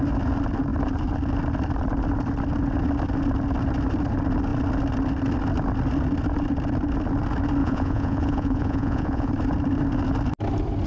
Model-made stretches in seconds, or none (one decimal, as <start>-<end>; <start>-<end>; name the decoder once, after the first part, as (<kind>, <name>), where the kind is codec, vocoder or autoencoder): 7.6-9.3 (vocoder, Vocos)